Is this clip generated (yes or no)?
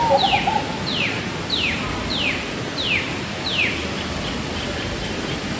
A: no